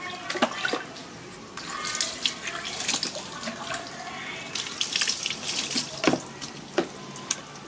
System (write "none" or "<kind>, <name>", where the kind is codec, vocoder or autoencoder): none